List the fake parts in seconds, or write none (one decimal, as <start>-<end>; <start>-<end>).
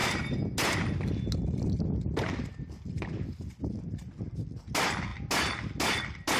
none